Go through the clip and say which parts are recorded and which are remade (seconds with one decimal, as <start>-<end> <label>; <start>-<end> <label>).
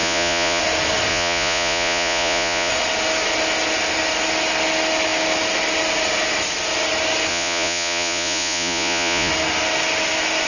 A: 0.0-0.6 remade; 0.6-1.1 recorded; 1.1-2.7 remade; 2.7-7.3 recorded; 7.3-9.3 remade; 9.3-10.5 recorded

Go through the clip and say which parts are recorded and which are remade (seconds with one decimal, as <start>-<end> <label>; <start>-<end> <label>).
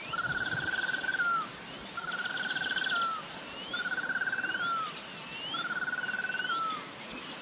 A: 0.0-7.4 recorded